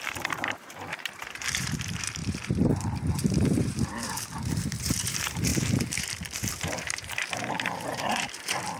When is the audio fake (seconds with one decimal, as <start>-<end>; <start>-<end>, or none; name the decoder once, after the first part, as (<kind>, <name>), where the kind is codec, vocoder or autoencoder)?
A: 0.0-8.8 (vocoder, BigVGAN v2)